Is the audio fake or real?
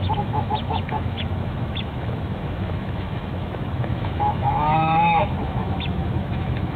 fake